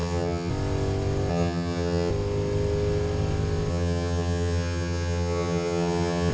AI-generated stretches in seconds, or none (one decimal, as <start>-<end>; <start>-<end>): 0.0-0.5; 1.3-2.1; 3.7-6.3